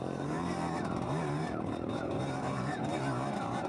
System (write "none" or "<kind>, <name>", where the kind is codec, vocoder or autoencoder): vocoder, BigVGAN v2